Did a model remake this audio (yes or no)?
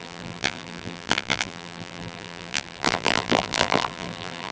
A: yes